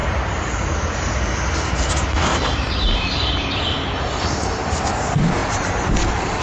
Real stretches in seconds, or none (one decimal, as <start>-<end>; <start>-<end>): 1.9-2.3; 4.8-5.4